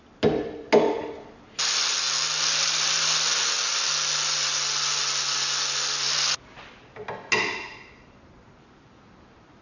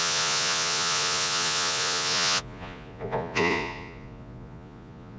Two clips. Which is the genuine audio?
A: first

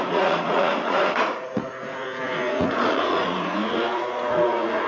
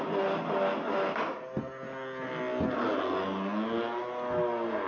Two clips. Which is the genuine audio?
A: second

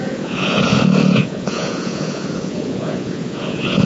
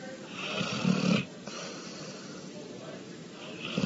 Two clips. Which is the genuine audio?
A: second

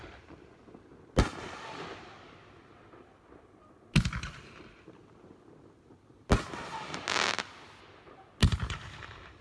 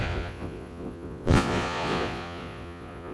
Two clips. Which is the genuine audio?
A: first